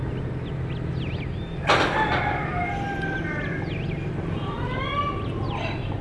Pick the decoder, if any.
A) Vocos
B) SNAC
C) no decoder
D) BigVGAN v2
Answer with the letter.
C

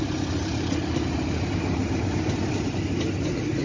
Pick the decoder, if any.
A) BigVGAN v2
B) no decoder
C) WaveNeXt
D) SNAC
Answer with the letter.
B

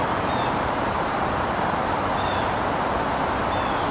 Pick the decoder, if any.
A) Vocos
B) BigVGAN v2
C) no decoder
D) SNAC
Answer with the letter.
C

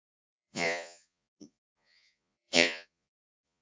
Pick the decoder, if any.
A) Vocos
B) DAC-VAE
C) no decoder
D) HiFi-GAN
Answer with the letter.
A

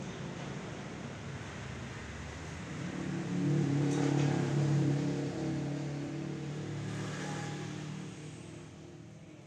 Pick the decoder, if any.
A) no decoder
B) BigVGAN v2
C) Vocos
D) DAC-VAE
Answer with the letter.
A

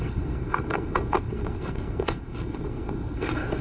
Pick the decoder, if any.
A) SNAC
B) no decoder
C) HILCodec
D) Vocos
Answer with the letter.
A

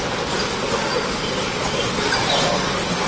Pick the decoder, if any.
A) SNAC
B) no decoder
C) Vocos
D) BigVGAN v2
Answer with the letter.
B